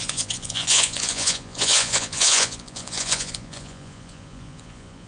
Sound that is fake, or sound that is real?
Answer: fake